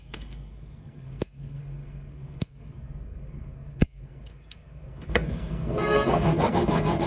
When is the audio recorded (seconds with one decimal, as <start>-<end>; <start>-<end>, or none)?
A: none